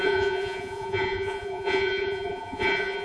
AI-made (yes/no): yes